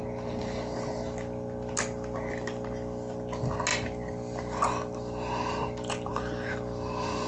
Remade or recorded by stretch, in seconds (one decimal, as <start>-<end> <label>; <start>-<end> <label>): 0.0-7.3 recorded